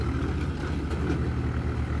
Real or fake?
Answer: real